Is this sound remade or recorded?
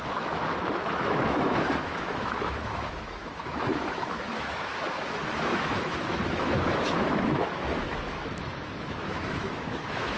remade